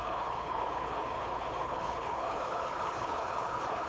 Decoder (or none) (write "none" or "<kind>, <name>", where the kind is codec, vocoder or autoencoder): codec, HILCodec